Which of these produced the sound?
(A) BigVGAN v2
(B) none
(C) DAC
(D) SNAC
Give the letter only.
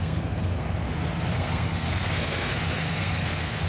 D